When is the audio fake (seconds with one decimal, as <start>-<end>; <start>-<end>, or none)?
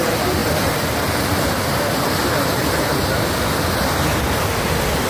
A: none